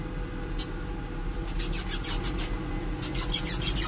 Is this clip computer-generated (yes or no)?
no